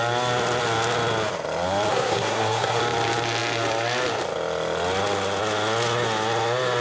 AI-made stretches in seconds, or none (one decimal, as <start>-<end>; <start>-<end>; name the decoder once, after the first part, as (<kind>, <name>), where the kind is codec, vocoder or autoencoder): 1.9-2.8 (codec, SNAC)